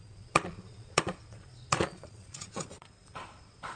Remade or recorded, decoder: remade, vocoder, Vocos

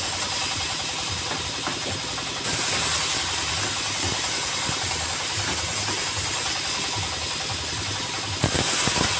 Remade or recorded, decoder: recorded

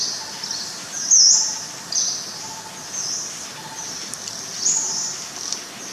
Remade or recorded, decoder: recorded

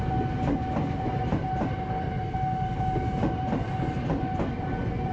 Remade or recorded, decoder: recorded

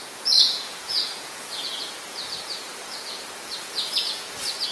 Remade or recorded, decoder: remade, vocoder, Vocos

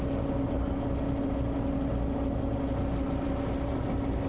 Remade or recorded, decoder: recorded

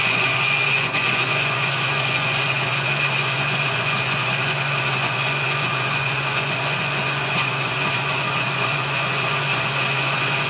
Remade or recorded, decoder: remade, vocoder, Vocos